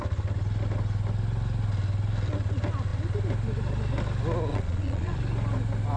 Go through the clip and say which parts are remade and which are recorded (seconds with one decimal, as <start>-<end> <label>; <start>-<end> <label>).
0.0-4.5 recorded; 4.5-5.2 remade; 5.2-6.0 recorded